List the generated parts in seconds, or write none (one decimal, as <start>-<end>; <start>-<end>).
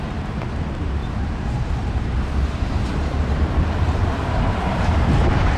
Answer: 0.0-4.0; 4.5-5.6